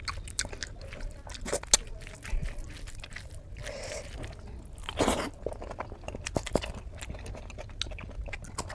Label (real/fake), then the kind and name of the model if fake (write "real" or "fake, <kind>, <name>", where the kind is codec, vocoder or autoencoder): real